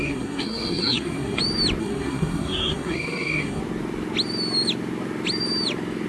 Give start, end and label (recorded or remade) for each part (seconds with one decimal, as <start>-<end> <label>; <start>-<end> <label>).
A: 0.0-1.4 remade; 1.4-1.8 recorded; 1.8-3.6 remade; 3.6-6.1 recorded